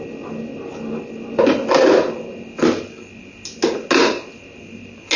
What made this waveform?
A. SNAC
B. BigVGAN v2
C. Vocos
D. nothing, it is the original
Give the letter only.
D